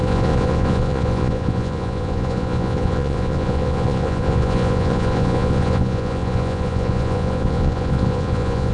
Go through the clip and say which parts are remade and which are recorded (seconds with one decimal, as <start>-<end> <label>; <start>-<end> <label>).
0.0-8.7 remade